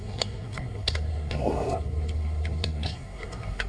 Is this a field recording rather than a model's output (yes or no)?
no